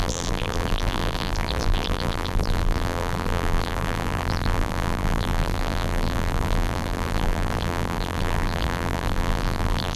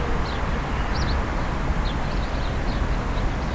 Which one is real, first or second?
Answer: second